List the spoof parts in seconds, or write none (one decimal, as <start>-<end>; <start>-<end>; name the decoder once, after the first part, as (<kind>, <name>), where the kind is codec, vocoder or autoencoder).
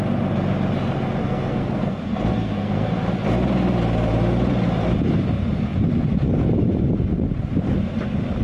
1.2-2.9 (codec, SNAC)